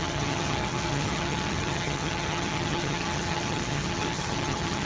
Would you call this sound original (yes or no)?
no